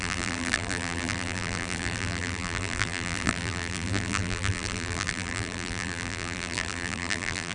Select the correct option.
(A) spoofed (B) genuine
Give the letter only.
A